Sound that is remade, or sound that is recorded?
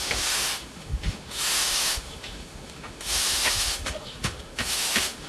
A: remade